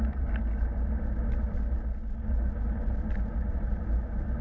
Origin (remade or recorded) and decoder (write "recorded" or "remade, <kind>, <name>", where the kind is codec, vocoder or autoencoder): recorded